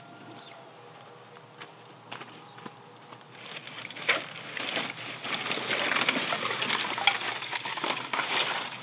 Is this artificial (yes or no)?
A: no